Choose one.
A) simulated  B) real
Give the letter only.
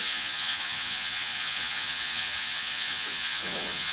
A